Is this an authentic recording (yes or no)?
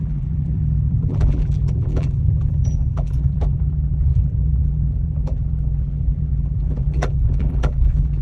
no